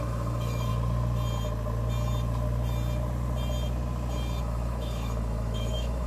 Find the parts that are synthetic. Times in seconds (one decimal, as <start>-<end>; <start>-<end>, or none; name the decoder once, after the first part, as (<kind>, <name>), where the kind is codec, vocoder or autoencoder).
0.0-0.7 (autoencoder, DAC-VAE); 4.4-6.1